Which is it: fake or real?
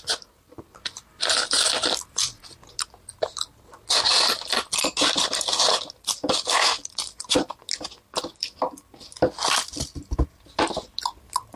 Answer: real